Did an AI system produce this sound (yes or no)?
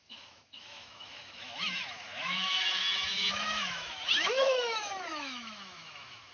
yes